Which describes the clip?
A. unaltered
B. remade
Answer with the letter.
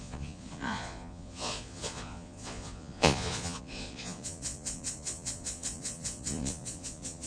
B